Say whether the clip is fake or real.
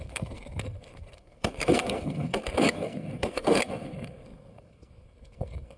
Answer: fake